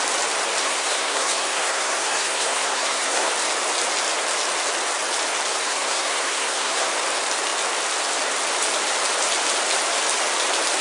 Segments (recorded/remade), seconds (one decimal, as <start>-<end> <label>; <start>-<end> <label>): 0.0-0.6 recorded; 0.6-3.3 remade; 3.3-5.5 recorded; 5.5-6.9 remade; 6.9-10.8 recorded